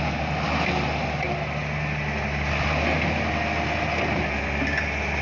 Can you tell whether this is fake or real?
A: real